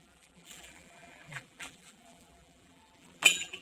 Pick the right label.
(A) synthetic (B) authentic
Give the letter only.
A